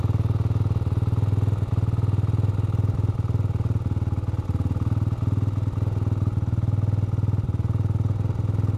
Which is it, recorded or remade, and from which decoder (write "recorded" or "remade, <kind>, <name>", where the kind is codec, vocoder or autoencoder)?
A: recorded